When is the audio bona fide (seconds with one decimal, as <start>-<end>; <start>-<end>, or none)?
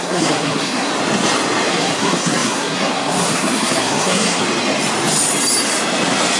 0.9-1.7; 4.4-6.4